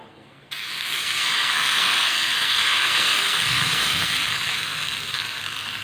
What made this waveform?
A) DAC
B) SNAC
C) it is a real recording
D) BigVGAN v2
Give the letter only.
B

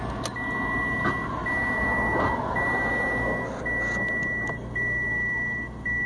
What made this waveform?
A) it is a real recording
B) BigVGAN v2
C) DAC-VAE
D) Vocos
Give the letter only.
A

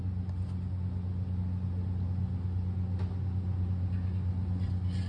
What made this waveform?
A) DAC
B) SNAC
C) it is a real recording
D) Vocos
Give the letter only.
C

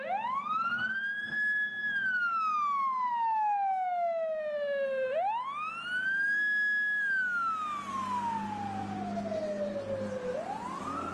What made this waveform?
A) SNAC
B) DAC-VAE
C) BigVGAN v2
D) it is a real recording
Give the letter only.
D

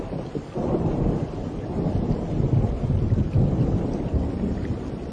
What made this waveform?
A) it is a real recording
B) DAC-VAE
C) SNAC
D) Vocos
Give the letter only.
A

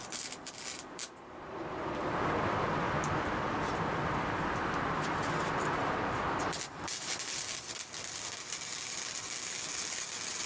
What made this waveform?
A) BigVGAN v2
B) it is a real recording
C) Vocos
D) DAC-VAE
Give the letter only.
A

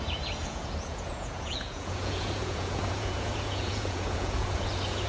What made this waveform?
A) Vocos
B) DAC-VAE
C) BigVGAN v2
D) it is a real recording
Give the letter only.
A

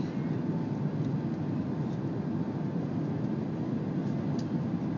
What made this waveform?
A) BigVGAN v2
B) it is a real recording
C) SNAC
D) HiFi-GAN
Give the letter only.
B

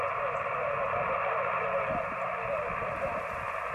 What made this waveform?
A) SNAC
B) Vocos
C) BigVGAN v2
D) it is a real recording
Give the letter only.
C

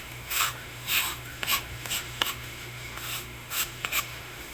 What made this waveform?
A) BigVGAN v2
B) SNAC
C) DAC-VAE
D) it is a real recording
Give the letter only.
C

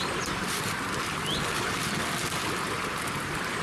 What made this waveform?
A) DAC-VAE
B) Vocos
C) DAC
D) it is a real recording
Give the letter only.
D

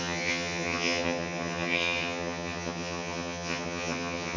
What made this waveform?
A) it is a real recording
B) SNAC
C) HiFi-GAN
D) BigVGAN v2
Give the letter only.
C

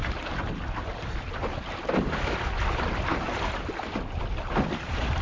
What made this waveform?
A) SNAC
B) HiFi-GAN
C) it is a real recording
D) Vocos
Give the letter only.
C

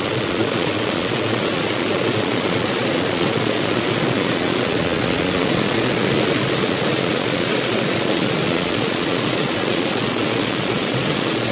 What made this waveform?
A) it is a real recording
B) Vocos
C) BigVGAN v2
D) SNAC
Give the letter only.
B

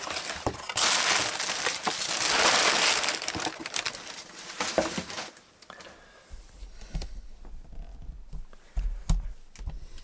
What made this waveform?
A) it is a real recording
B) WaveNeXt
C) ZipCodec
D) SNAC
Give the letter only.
A